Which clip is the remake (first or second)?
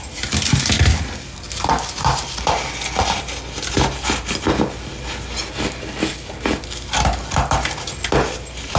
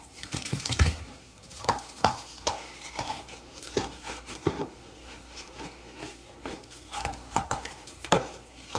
second